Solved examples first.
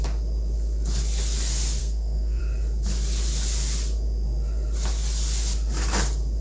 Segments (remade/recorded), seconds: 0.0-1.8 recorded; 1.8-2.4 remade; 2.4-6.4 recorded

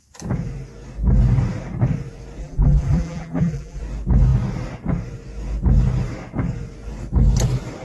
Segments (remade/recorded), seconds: 0.0-2.4 recorded; 2.4-3.8 remade; 3.8-7.8 recorded

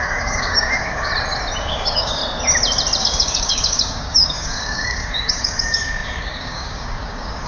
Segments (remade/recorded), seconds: 0.0-1.1 remade; 1.1-1.6 recorded; 1.6-2.2 remade; 2.2-3.0 recorded; 3.0-7.5 remade

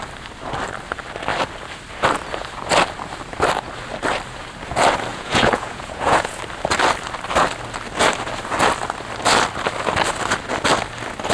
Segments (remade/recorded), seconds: 0.0-5.1 recorded; 5.1-6.4 remade; 6.4-11.3 recorded

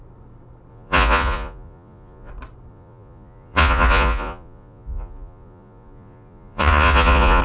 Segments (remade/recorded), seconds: 0.0-0.7 recorded; 0.7-2.3 remade; 2.3-2.7 recorded; 2.7-7.4 remade

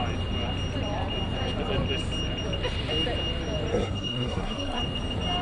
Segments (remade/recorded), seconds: 0.0-3.7 recorded; 3.7-4.8 remade; 4.8-5.4 recorded

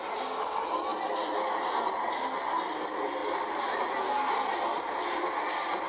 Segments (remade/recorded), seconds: 0.0-3.2 recorded; 3.2-3.8 remade; 3.8-5.9 recorded